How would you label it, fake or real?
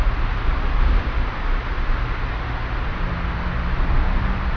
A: real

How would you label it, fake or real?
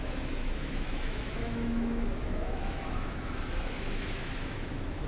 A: fake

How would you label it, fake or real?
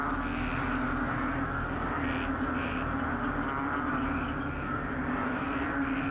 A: real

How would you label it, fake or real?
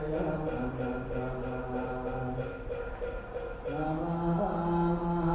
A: real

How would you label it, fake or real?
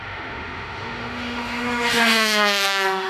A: fake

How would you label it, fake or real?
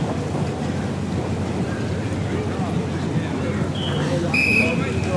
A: real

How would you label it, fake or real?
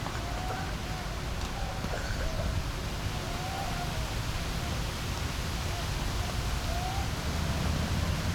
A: real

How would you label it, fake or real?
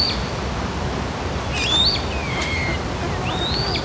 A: real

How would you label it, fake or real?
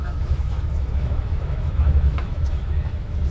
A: fake